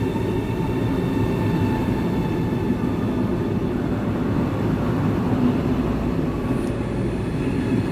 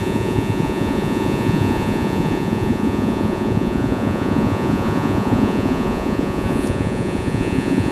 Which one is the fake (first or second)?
second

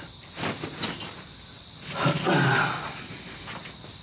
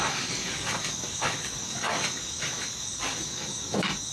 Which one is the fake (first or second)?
second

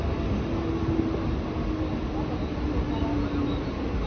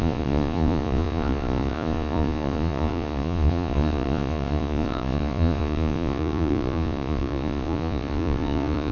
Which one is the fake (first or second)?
second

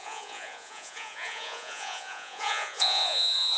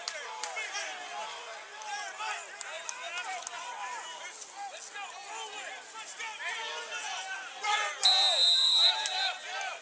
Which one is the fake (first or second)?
first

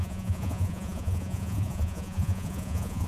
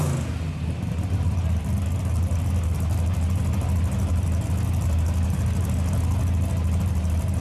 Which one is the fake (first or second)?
first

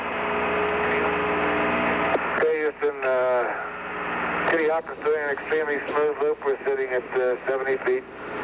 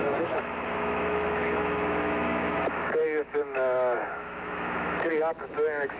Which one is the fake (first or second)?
second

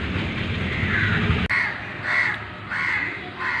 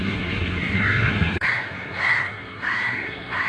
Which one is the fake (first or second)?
second